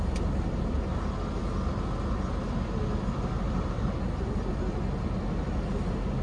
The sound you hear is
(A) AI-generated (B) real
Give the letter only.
B